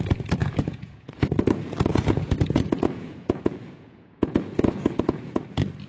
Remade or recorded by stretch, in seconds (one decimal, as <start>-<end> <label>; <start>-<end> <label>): 0.0-0.4 recorded; 0.4-1.2 remade; 1.2-1.9 recorded; 1.9-5.4 remade; 5.4-5.9 recorded